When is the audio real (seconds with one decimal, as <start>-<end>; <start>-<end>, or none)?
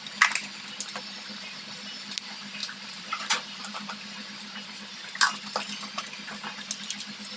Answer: 0.0-2.6; 3.6-7.4